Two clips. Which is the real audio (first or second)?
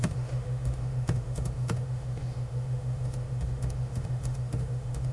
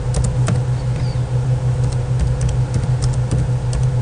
second